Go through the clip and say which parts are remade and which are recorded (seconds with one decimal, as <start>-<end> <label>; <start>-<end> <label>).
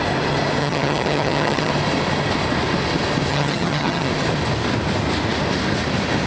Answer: 0.0-0.6 recorded; 0.6-1.7 remade; 1.7-3.3 recorded; 3.3-4.1 remade; 4.1-6.3 recorded